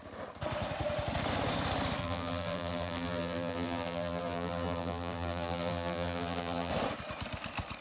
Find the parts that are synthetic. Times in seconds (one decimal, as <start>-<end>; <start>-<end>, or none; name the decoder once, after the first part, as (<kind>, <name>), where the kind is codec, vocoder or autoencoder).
2.0-6.7 (vocoder, BigVGAN v2)